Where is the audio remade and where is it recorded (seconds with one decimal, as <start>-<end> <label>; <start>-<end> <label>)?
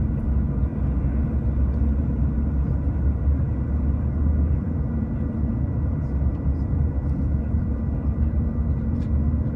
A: 0.0-0.7 remade; 0.7-1.9 recorded; 1.9-9.6 remade